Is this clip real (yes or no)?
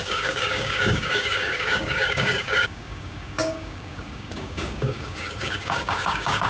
no